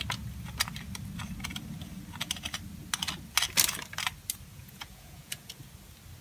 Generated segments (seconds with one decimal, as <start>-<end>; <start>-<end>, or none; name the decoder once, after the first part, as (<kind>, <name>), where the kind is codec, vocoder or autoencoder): 4.5-5.5 (vocoder, Vocos)